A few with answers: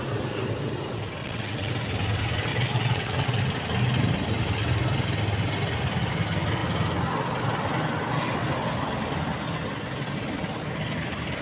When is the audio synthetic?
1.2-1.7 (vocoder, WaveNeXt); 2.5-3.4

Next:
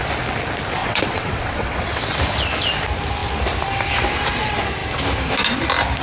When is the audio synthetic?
0.8-2.0 (vocoder, WaveNeXt)